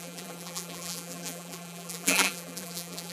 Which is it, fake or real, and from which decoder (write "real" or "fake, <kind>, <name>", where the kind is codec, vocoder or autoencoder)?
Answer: fake, vocoder, BigVGAN v2